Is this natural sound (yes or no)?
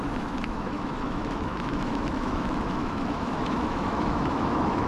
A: no